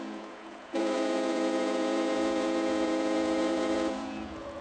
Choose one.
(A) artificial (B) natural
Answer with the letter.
A